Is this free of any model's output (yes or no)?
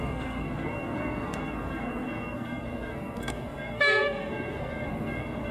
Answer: no